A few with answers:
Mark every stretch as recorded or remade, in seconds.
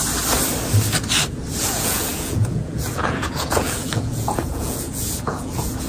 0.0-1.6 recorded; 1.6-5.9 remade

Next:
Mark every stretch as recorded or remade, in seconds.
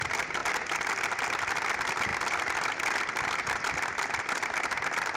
0.0-5.2 recorded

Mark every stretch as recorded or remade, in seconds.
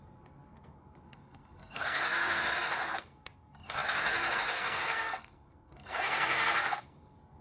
0.0-7.4 remade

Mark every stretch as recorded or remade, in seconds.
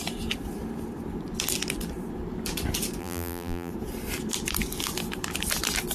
0.0-3.0 recorded; 3.0-3.7 remade; 3.7-5.9 recorded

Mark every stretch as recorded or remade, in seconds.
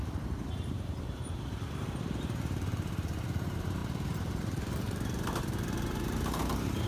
0.0-6.9 remade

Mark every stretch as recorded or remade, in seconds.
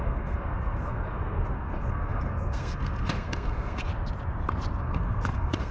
0.0-3.9 remade; 3.9-4.8 recorded; 4.8-5.7 remade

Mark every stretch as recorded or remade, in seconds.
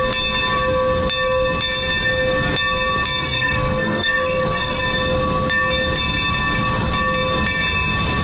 0.0-3.2 recorded; 3.2-4.8 remade; 4.8-8.2 recorded